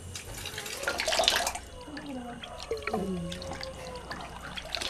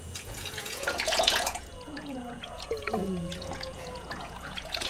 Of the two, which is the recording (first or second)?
first